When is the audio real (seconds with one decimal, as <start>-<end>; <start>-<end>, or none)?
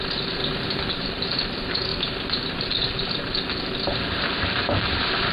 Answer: 0.4-0.9; 1.9-2.5